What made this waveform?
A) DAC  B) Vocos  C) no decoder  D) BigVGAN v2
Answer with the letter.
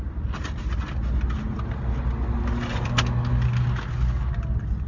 C